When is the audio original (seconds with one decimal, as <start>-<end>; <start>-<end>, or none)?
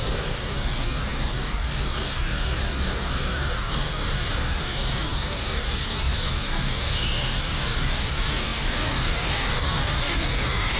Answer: none